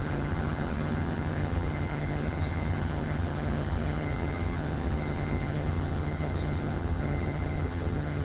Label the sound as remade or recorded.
remade